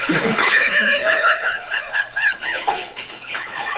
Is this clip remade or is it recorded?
remade